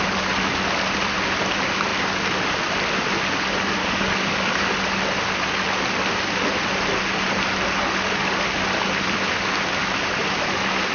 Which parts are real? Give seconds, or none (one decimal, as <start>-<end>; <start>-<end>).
0.0-3.8; 4.7-10.9

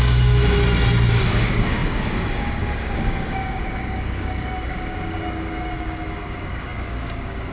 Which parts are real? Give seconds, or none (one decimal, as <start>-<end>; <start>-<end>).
0.4-1.1

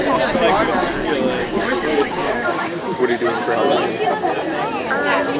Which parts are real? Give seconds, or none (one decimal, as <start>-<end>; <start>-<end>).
0.0-1.4; 3.0-5.4

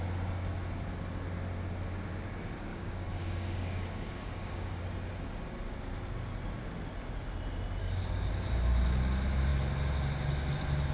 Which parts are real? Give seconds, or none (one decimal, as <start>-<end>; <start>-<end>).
0.0-2.7; 4.8-7.8; 8.3-10.9

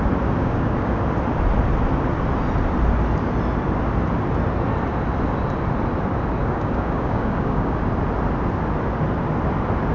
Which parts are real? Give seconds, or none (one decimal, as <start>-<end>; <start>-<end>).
0.0-0.4; 1.0-6.4; 7.8-9.9

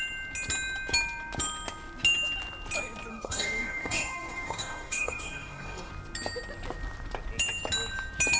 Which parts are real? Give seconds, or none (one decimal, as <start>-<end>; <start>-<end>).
0.0-3.1; 5.9-8.4

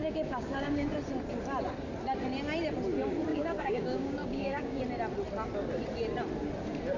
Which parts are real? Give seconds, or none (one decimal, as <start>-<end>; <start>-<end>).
0.9-3.3; 4.8-7.0

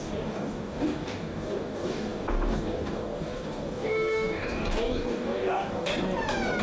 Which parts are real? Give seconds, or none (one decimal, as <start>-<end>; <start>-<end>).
5.9-6.6